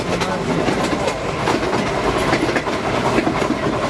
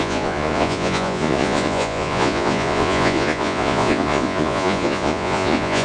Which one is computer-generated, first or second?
second